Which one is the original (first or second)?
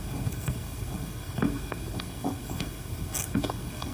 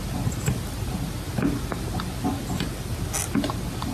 second